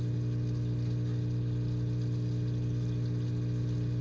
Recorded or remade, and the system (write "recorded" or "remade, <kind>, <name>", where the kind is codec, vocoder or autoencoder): recorded